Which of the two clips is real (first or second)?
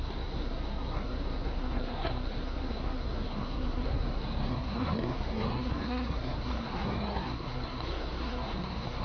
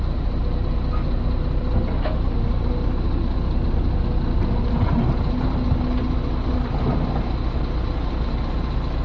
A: second